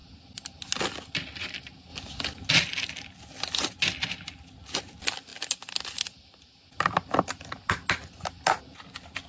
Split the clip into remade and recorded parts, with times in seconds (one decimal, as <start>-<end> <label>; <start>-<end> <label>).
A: 0.0-9.3 recorded